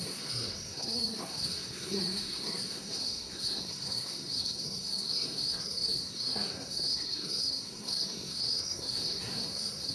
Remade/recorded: remade